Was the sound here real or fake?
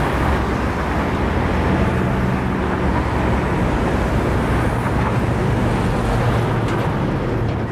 real